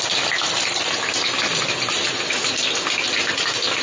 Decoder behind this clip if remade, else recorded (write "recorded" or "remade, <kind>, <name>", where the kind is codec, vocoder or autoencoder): recorded